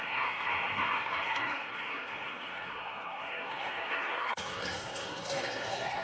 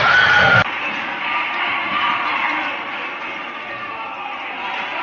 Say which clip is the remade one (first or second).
first